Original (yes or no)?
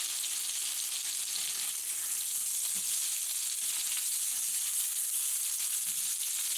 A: yes